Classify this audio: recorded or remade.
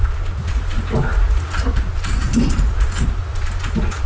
recorded